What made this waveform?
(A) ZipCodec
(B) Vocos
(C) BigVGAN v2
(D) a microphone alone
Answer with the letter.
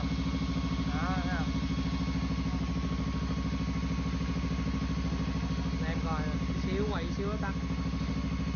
D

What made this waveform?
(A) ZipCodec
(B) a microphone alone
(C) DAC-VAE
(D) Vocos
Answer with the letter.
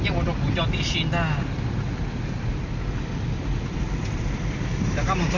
B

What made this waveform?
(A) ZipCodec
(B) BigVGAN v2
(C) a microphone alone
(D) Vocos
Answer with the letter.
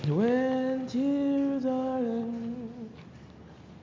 C